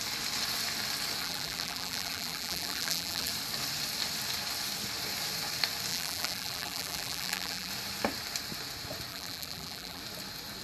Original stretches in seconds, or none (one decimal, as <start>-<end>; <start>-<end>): 0.0-1.2; 3.3-5.9; 7.7-9.1; 10.0-10.6